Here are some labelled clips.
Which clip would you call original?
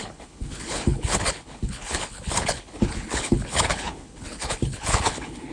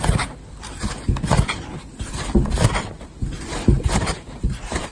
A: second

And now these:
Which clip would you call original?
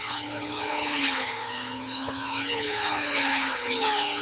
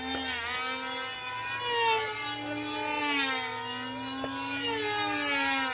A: second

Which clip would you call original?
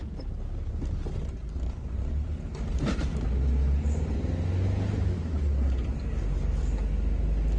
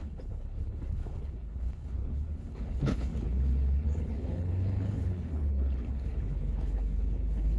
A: first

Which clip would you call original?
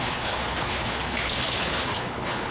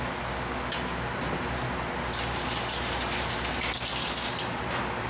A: second